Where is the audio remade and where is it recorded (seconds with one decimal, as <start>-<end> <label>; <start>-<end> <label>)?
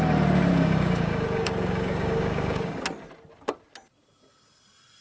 0.0-0.5 recorded; 0.5-2.8 remade; 2.8-5.0 recorded